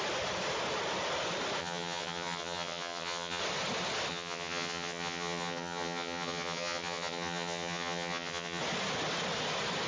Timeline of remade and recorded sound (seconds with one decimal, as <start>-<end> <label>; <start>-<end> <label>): 0.0-1.6 recorded; 1.6-3.4 remade; 3.4-4.1 recorded; 4.1-8.6 remade; 8.6-9.9 recorded